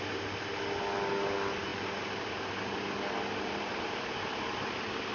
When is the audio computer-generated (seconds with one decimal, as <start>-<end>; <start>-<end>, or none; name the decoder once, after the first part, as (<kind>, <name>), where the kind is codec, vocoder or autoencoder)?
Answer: none